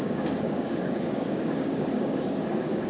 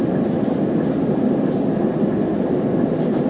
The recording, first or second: second